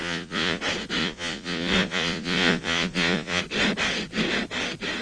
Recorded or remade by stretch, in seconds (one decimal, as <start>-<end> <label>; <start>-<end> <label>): 0.0-0.6 remade; 0.6-1.0 recorded; 1.0-3.4 remade; 3.4-5.0 recorded